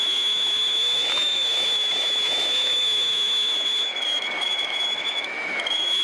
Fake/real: fake